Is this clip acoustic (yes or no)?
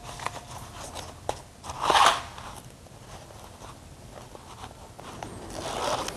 yes